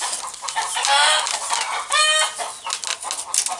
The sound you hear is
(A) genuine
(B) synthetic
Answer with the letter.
A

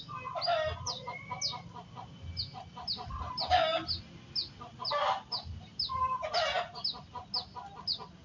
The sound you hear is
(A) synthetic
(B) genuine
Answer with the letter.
B